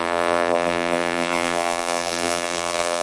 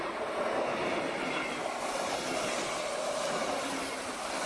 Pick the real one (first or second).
second